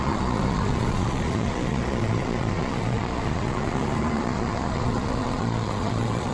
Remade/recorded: remade